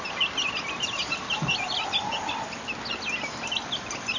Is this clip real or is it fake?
real